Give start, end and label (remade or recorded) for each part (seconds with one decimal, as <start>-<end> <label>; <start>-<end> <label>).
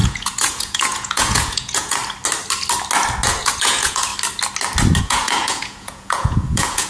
0.0-2.0 remade; 2.0-3.4 recorded; 3.4-4.1 remade; 4.1-5.0 recorded; 5.0-6.9 remade